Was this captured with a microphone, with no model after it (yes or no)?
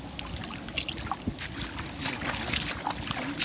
yes